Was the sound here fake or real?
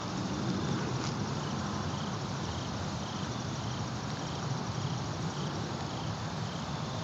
fake